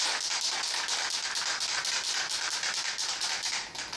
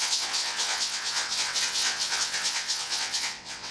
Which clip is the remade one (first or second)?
second